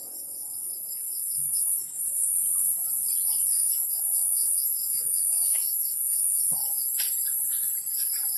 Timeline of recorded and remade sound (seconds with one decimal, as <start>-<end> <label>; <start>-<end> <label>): 0.0-1.5 recorded; 1.5-2.3 remade; 2.3-3.5 recorded; 3.5-6.4 remade; 6.4-8.4 recorded